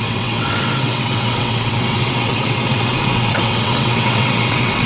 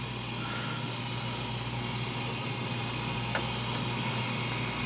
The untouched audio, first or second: second